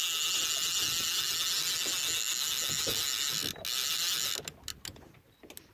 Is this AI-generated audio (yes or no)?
no